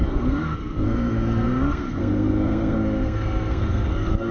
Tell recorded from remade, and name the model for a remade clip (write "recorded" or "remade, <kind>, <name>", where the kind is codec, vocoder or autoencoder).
remade, codec, SNAC